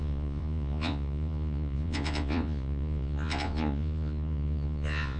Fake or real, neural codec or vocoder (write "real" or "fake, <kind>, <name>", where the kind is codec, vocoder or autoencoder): fake, vocoder, Vocos